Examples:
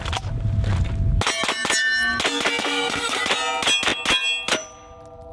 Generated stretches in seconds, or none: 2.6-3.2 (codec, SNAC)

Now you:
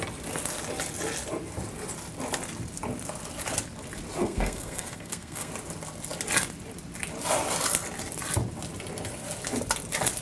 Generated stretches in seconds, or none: 4.2-5.5 (codec, SNAC)

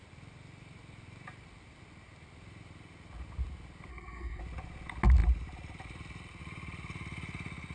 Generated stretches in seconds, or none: 3.9-4.4 (codec, SNAC)

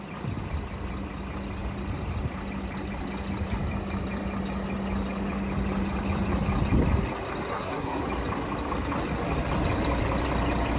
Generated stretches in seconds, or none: 7.5-8.0 (codec, SNAC)

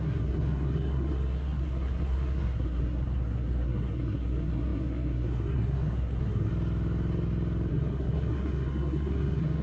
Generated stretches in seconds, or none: 0.0-6.5 (codec, SNAC); 7.7-9.6

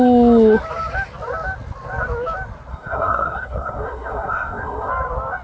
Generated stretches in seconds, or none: 2.7-4.9 (codec, SNAC)

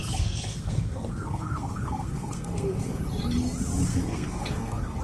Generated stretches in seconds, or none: 0.0-3.0 (codec, SNAC); 3.9-5.0